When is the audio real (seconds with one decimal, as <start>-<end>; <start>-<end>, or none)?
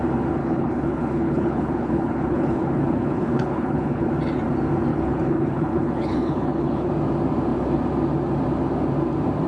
0.0-0.4; 4.1-4.9; 6.9-9.5